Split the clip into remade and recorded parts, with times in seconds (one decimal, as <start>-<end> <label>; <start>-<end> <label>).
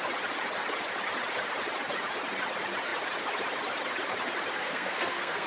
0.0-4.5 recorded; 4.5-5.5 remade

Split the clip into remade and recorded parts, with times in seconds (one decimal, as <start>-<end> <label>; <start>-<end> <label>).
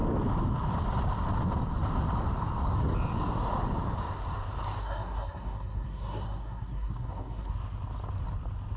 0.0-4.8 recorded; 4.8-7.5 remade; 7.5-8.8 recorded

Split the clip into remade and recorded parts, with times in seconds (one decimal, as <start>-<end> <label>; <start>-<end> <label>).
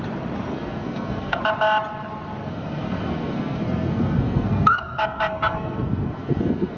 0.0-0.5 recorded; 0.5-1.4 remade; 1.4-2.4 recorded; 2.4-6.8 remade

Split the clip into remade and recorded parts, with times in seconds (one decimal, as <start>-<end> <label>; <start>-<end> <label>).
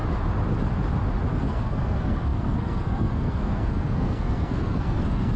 0.0-1.3 recorded; 1.3-5.4 remade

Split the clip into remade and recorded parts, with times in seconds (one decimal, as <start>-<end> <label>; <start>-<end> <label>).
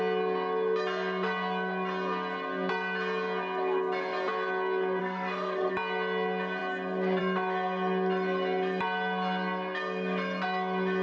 0.0-5.0 recorded; 5.0-5.7 remade; 5.7-11.0 recorded